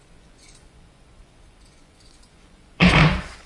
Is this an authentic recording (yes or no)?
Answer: no